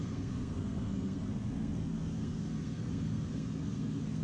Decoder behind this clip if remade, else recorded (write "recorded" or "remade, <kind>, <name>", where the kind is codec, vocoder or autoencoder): remade, codec, SNAC